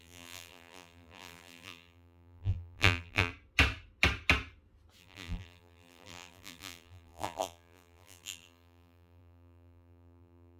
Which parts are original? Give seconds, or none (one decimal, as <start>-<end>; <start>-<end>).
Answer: 3.3-5.0